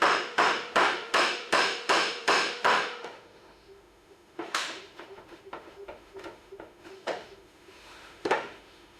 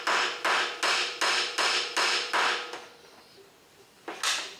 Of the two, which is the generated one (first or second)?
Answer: first